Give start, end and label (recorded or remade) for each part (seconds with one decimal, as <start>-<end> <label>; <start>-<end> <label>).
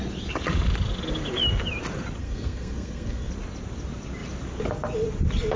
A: 0.0-2.2 recorded; 2.2-3.3 remade; 3.3-5.6 recorded